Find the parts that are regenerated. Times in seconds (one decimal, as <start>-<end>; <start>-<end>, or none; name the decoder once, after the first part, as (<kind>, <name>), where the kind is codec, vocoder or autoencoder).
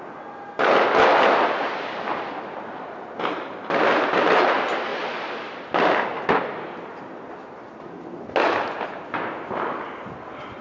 none